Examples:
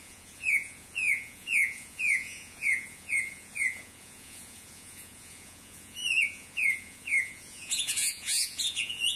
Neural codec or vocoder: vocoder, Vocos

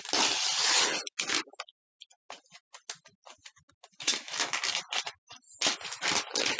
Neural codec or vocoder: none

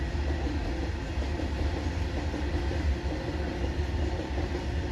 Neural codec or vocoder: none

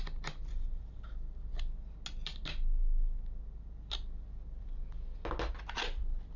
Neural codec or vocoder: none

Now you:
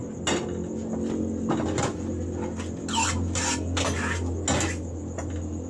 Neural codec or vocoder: none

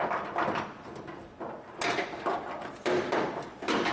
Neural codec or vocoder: none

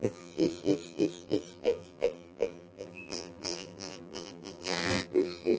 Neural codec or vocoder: vocoder, BigVGAN v2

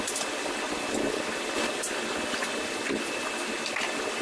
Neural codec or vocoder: none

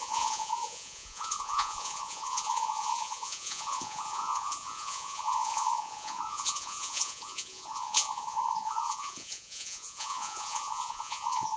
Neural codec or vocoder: vocoder, Vocos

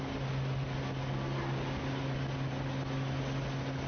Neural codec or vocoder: none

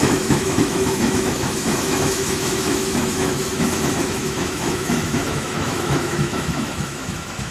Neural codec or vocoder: autoencoder, DAC-VAE